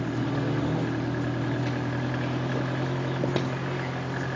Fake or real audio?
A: real